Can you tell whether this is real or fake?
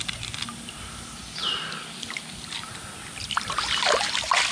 real